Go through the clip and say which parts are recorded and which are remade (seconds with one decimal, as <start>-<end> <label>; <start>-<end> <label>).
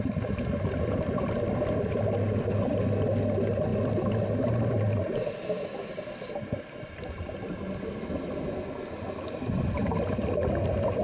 0.0-11.0 recorded